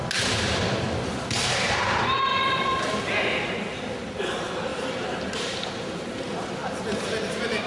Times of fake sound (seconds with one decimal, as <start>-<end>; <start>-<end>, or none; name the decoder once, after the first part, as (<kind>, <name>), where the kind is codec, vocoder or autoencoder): 2.3-2.8 (vocoder, BigVGAN v2); 4.7-5.3; 6.6-7.2